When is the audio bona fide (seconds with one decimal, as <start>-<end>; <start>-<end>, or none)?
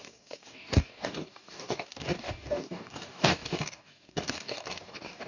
none